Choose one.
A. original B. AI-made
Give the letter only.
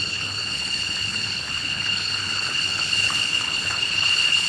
B